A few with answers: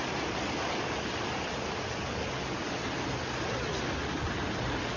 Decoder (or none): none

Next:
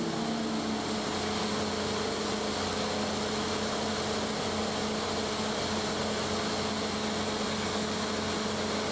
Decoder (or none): none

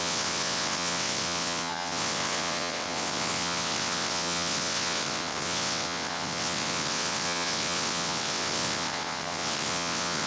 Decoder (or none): vocoder, WaveNeXt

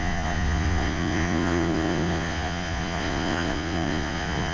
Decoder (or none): vocoder, Vocos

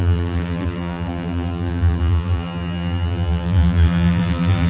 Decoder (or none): vocoder, BigVGAN v2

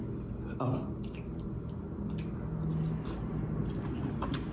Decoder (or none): none